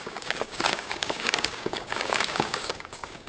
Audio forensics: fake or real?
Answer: fake